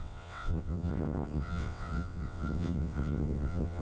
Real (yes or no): no